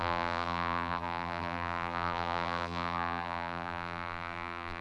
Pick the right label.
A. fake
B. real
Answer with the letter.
A